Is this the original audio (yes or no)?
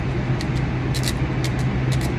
yes